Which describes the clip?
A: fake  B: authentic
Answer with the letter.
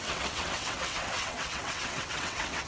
A